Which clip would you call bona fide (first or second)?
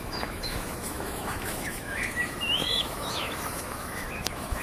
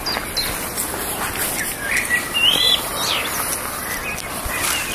second